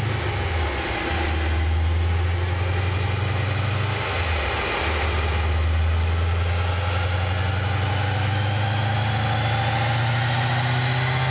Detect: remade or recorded recorded